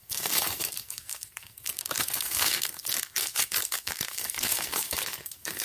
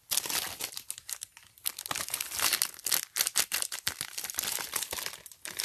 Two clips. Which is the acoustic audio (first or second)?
second